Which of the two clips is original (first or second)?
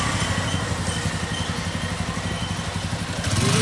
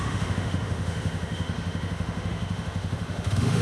first